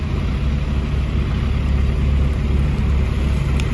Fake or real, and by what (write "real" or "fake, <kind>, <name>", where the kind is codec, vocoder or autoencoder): real